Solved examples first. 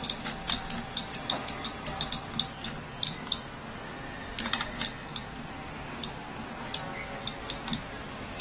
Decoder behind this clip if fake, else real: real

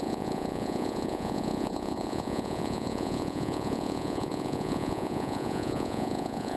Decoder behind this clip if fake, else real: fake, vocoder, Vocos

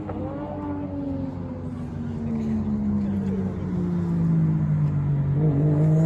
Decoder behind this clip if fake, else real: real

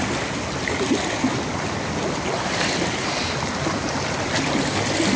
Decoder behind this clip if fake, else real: real